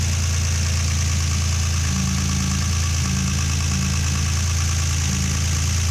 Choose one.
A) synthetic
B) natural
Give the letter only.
B